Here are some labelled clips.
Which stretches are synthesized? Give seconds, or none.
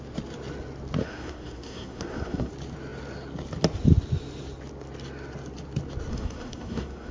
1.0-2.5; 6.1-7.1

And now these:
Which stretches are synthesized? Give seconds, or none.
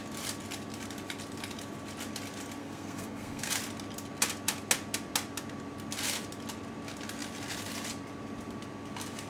2.6-3.5